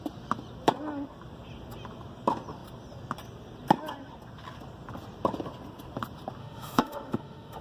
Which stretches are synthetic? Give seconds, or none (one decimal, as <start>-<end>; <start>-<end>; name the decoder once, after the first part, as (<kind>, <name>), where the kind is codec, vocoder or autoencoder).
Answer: 6.4-7.6 (autoencoder, DAC-VAE)